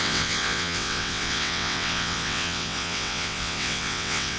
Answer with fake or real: fake